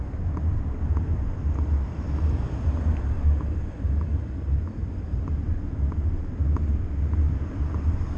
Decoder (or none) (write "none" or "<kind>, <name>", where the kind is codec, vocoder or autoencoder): none